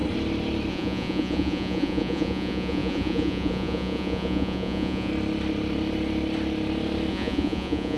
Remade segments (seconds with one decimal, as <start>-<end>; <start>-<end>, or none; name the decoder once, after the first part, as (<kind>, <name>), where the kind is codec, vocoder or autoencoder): 0.7-5.1 (vocoder, Vocos); 7.1-8.0